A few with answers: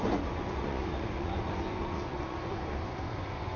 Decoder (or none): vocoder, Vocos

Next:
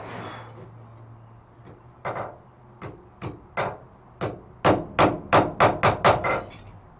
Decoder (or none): none